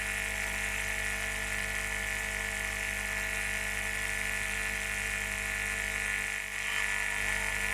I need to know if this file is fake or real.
real